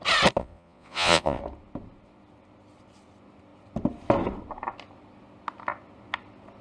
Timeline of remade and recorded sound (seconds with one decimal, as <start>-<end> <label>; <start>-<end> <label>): 0.0-0.4 recorded; 0.4-1.4 remade; 1.4-6.6 recorded